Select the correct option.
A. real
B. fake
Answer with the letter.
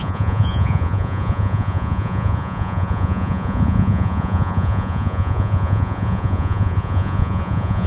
B